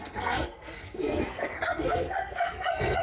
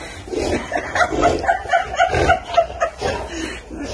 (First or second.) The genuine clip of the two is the second